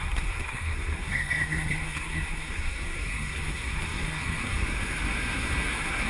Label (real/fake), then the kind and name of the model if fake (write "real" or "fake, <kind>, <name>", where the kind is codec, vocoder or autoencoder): fake, codec, SNAC